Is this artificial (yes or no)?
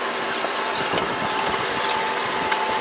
yes